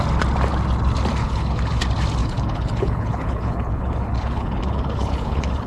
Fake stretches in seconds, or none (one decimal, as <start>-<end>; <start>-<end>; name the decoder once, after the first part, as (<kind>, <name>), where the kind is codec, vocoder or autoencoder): 1.2-1.8 (codec, HILCodec); 2.2-5.7